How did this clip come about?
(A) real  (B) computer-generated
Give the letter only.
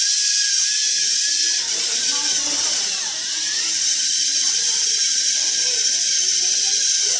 A